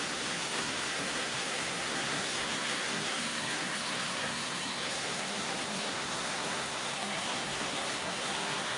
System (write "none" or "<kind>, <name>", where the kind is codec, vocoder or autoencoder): codec, SNAC